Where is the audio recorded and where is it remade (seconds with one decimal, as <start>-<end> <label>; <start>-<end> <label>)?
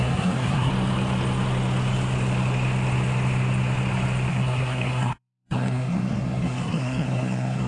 0.0-0.7 remade; 0.7-4.3 recorded; 4.3-7.7 remade